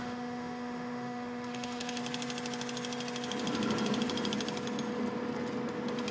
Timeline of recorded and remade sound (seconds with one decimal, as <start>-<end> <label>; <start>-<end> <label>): 0.0-2.0 remade; 2.0-6.1 recorded

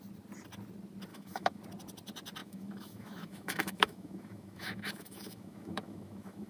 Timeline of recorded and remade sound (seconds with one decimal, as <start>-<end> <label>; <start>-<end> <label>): 0.0-1.1 recorded; 1.1-1.6 remade; 1.6-2.4 recorded; 2.4-6.5 remade

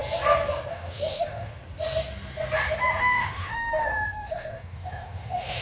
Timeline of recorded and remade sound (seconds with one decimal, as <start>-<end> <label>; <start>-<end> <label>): 0.0-0.7 recorded; 0.7-1.5 remade; 1.5-3.0 recorded; 3.0-5.6 remade

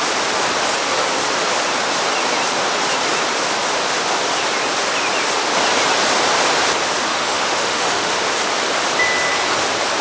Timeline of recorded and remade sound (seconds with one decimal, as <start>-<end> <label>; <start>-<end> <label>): 0.0-7.1 recorded; 7.1-8.1 remade; 8.1-10.0 recorded

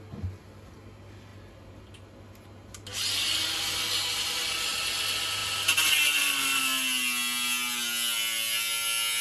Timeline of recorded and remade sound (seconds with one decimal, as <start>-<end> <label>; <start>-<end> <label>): 0.0-9.2 recorded

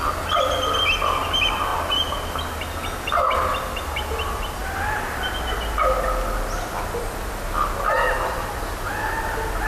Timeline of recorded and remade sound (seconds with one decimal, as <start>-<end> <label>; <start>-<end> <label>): 0.0-9.7 recorded